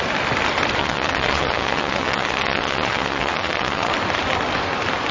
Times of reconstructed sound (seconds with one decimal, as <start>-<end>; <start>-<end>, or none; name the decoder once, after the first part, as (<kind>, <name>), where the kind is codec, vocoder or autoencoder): 0.8-3.9 (vocoder, WaveNeXt)